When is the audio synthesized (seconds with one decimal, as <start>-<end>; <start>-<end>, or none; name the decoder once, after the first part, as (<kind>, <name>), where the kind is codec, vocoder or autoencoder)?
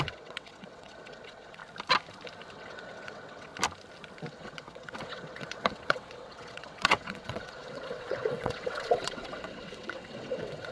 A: 0.0-1.6 (vocoder, WaveNeXt); 2.5-3.5; 4.3-10.7